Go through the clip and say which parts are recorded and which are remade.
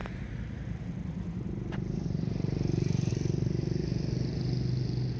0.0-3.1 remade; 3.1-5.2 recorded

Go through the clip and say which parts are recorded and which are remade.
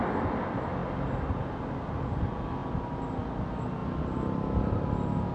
0.0-5.3 recorded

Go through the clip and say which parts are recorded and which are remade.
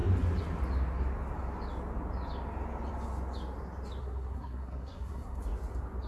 0.0-4.0 recorded; 4.0-5.4 remade; 5.4-6.1 recorded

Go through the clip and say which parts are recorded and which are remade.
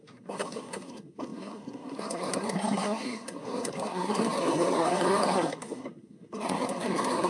0.0-7.3 remade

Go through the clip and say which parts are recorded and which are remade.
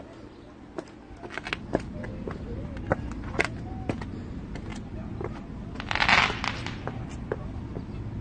0.0-8.2 recorded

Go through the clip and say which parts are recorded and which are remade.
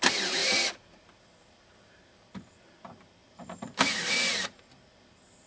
0.0-0.4 recorded; 0.4-2.3 remade; 2.3-3.2 recorded; 3.2-4.6 remade; 4.6-5.5 recorded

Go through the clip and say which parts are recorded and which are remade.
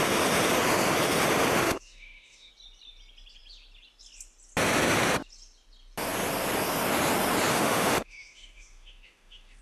0.0-1.6 recorded; 1.6-2.5 remade; 2.5-7.5 recorded; 7.5-9.6 remade